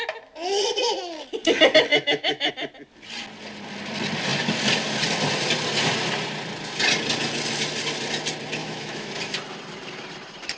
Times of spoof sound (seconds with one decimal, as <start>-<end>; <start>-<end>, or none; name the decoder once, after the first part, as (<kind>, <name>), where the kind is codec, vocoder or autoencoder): 1.9-2.5 (autoencoder, DAC-VAE); 8.6-9.1